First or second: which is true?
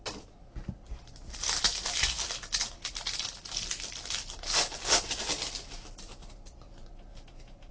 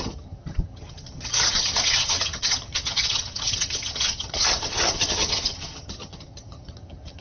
first